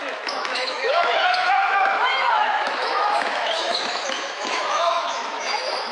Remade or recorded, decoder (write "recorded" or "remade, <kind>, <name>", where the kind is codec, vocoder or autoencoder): remade, autoencoder, DAC-VAE